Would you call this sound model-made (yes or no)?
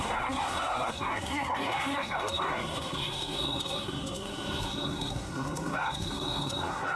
yes